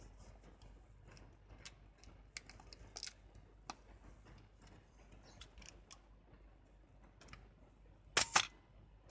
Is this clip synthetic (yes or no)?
no